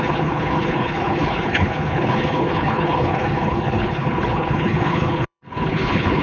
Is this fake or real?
fake